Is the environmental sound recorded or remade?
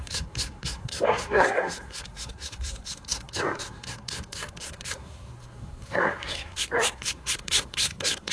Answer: remade